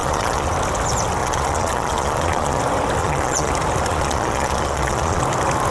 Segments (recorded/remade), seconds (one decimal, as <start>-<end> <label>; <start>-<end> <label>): 0.0-0.5 remade; 0.5-1.2 recorded; 1.2-2.6 remade; 2.6-3.0 recorded; 3.0-3.5 remade; 3.5-3.9 recorded; 3.9-5.2 remade; 5.2-5.7 recorded